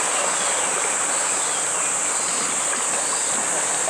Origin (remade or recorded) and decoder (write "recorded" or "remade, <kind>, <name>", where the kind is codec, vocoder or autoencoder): recorded